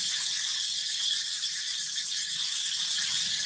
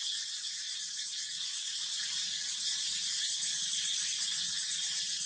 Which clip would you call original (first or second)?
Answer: first